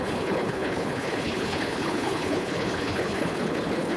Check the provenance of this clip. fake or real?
fake